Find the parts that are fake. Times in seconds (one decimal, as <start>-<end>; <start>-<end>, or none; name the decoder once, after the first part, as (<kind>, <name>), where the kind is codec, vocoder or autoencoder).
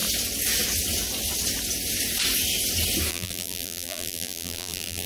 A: 3.1-5.1 (vocoder, BigVGAN v2)